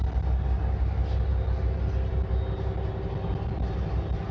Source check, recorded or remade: recorded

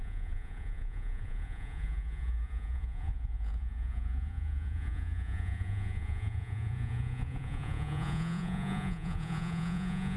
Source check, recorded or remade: remade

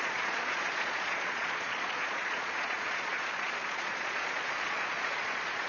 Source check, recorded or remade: remade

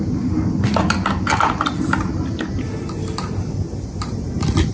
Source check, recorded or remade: recorded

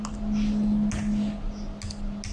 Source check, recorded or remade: recorded